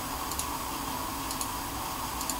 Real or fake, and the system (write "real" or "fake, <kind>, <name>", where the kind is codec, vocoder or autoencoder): real